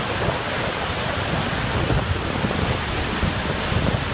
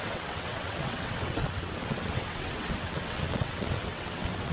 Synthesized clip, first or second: second